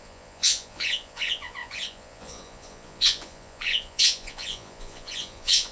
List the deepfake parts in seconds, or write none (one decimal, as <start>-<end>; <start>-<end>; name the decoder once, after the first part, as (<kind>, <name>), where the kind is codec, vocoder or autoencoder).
0.0-5.7 (vocoder, Vocos)